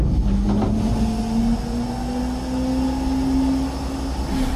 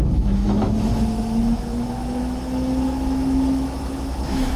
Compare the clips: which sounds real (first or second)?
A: first